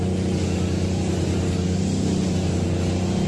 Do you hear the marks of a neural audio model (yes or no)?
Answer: no